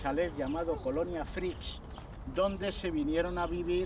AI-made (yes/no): no